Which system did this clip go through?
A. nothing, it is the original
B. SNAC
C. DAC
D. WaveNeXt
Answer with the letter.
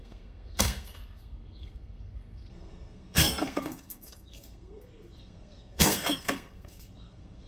B